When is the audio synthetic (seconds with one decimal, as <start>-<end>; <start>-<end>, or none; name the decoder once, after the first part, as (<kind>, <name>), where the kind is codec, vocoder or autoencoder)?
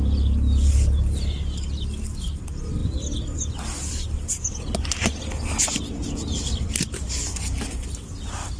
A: none